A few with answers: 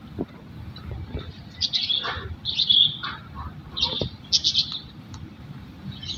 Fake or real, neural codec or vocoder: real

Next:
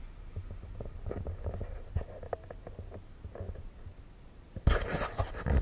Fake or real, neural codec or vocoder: real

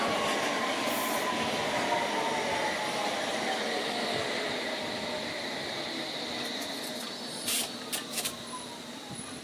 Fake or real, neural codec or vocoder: real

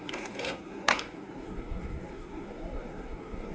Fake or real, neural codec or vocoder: fake, codec, SNAC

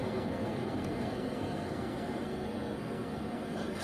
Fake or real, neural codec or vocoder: fake, codec, SNAC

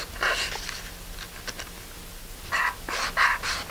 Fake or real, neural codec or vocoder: real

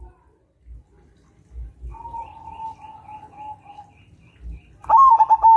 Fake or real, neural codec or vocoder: real